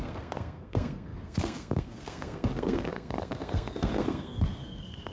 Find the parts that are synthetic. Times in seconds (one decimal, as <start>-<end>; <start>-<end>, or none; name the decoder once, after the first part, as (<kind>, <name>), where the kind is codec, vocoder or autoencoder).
0.0-5.1 (codec, SNAC)